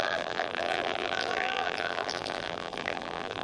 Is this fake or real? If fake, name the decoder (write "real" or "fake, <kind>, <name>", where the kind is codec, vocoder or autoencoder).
fake, vocoder, BigVGAN v2